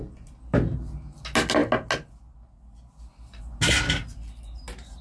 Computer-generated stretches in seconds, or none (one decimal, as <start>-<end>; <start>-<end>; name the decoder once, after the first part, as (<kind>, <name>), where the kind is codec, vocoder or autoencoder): none